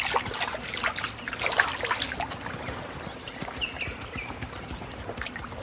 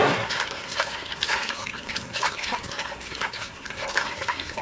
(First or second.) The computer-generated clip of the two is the second